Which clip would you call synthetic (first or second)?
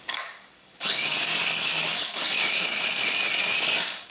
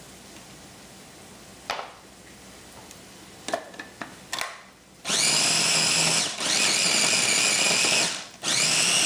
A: first